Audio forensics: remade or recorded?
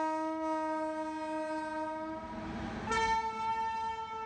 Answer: recorded